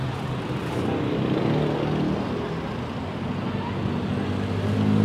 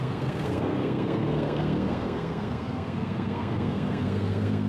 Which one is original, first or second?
first